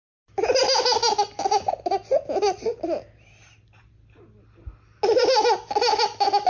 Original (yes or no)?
yes